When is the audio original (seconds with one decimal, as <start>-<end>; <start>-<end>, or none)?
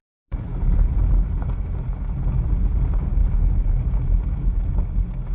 0.0-3.2; 3.7-5.3